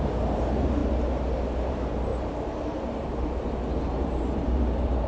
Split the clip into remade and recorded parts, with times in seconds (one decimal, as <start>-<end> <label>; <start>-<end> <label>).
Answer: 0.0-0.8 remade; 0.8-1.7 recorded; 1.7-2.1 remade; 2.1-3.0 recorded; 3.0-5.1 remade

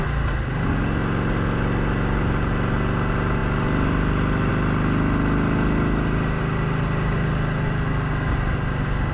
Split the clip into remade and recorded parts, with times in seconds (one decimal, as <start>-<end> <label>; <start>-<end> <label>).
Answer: 0.0-9.1 recorded

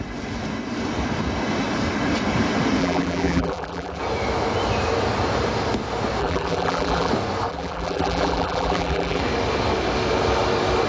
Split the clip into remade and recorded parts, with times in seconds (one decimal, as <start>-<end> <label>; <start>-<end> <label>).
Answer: 0.0-2.8 recorded; 2.8-4.0 remade; 4.0-6.2 recorded; 6.2-7.1 remade; 7.1-7.5 recorded; 7.5-9.2 remade; 9.2-10.9 recorded